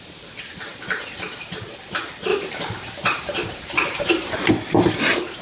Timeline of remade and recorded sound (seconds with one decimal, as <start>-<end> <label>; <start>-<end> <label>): 0.0-2.3 recorded; 2.3-4.5 remade; 4.5-5.4 recorded